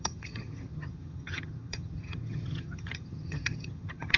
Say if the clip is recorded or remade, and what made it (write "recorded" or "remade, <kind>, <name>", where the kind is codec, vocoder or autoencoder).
remade, vocoder, HiFi-GAN